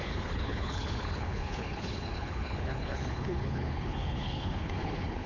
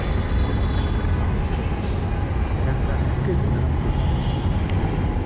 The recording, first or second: second